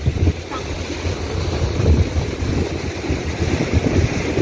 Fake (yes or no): no